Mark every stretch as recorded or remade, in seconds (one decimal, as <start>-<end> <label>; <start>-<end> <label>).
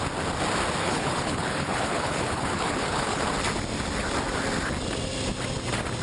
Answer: 0.0-0.8 recorded; 0.8-3.2 remade; 3.2-6.0 recorded